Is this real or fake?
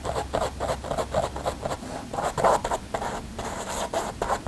real